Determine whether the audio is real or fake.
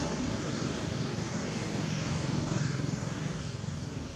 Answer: fake